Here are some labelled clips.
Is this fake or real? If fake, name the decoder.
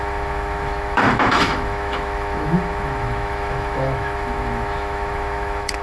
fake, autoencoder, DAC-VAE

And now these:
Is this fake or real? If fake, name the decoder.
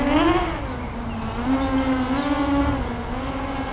real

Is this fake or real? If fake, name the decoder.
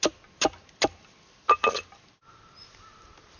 real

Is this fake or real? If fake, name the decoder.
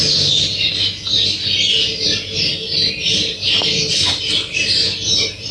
real